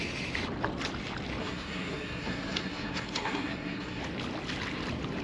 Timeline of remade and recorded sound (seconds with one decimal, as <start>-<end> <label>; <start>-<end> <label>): 0.0-1.4 recorded; 1.4-4.0 remade; 4.0-5.2 recorded